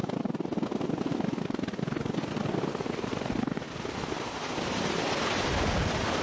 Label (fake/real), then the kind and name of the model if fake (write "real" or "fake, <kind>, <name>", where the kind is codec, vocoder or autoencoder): real